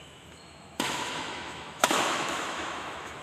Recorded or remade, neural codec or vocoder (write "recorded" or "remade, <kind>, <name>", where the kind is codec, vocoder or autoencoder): remade, autoencoder, DAC-VAE